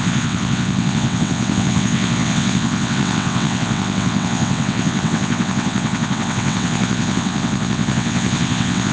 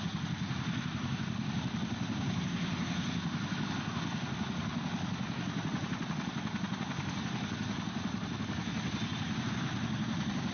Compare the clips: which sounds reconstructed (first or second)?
first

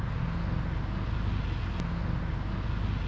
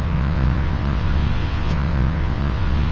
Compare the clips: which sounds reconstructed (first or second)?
second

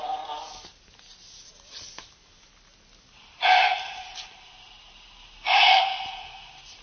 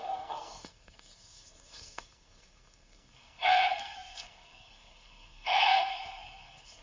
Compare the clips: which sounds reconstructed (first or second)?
second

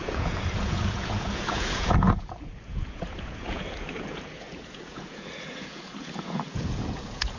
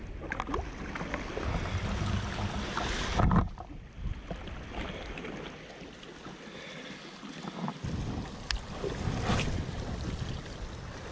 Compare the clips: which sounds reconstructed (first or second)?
first